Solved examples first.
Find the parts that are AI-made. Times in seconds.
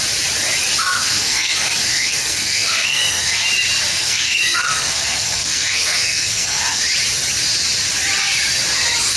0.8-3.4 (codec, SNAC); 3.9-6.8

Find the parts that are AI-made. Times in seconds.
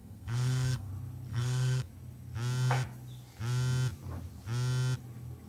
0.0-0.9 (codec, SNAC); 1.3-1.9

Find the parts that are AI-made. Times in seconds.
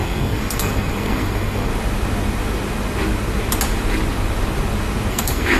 0.0-1.7 (codec, SNAC); 5.1-5.6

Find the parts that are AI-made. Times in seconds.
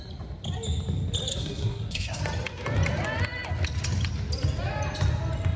1.3-2.2 (codec, SNAC)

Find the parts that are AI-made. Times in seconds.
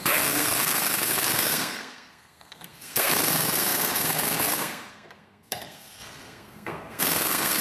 0.0-7.6 (codec, SNAC)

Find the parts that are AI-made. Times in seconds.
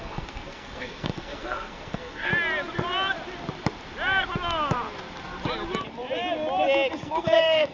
0.0-2.3 (codec, SNAC); 6.9-7.7